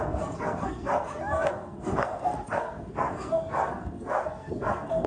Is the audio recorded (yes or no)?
no